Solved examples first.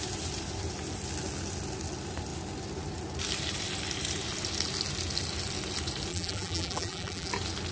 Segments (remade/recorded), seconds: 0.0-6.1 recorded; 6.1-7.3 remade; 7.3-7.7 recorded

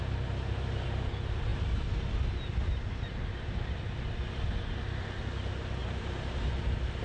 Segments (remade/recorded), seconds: 0.0-5.8 recorded; 5.8-6.5 remade; 6.5-7.0 recorded

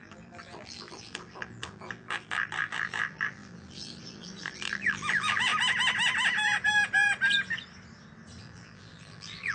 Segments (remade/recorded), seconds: 0.0-5.5 remade; 5.5-8.4 recorded; 8.4-9.5 remade